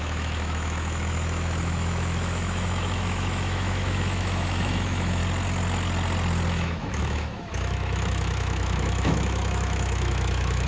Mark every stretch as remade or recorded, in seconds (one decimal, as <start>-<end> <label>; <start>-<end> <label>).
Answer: 0.0-5.2 remade; 5.2-6.5 recorded; 6.5-10.7 remade